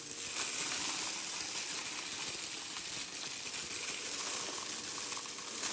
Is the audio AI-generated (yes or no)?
no